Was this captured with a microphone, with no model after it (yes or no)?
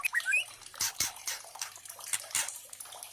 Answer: no